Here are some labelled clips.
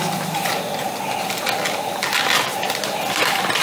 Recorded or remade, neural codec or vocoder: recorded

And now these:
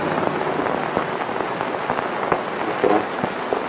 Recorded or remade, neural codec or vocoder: recorded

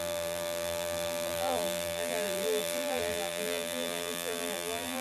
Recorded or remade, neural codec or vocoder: remade, vocoder, BigVGAN v2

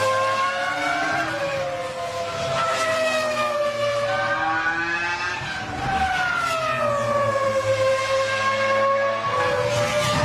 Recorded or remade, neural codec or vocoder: recorded